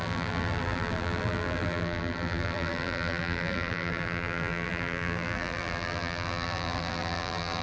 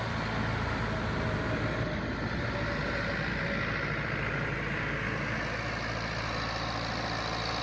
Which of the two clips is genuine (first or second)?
second